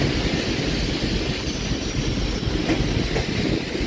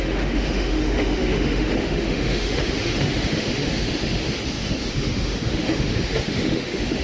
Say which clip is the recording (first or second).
first